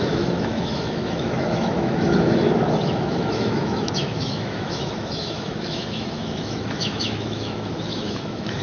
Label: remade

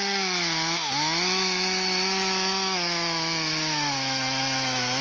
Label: remade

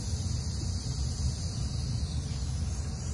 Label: recorded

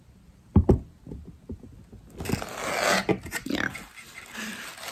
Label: recorded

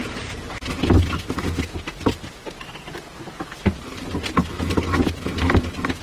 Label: recorded